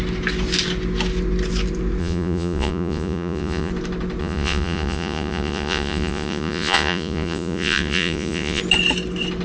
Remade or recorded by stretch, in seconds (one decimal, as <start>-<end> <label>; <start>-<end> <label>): 0.0-2.0 recorded; 2.0-3.7 remade; 3.7-4.2 recorded; 4.2-8.6 remade; 8.6-9.4 recorded